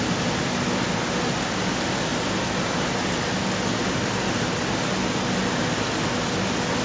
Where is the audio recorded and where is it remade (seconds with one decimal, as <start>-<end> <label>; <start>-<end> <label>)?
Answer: 0.0-6.8 recorded